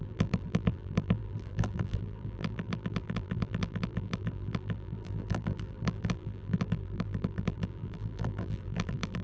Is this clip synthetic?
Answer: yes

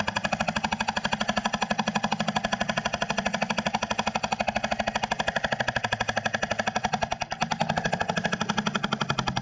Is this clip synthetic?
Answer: no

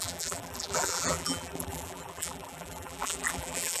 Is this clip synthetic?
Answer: yes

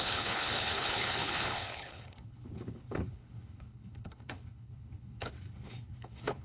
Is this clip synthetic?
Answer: yes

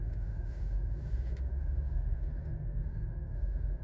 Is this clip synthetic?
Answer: yes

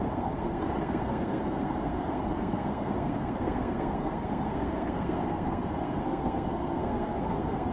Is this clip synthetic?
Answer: yes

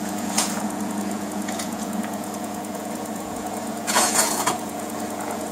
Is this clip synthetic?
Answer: yes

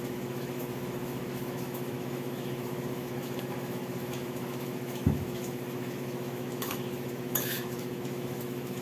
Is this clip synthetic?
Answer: yes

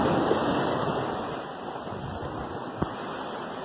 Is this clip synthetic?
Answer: no